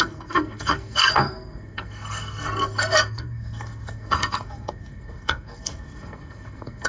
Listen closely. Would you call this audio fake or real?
fake